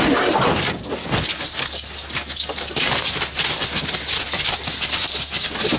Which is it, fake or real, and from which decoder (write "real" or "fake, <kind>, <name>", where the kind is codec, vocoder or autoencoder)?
real